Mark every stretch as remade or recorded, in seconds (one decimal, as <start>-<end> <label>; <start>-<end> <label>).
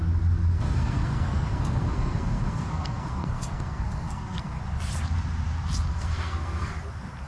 0.0-0.5 recorded; 0.5-4.6 remade; 4.6-5.9 recorded; 5.9-6.7 remade; 6.7-7.3 recorded